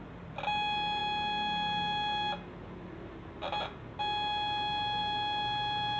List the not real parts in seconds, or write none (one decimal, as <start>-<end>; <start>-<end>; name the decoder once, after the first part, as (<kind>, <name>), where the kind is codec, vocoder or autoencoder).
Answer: none

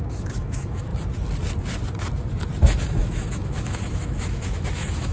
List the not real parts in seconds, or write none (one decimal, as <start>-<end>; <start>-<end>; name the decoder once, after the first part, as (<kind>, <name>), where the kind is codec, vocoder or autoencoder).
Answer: 0.0-0.9 (autoencoder, DAC-VAE); 3.0-5.1